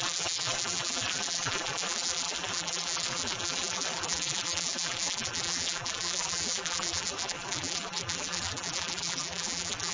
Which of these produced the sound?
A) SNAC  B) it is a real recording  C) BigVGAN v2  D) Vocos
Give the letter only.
C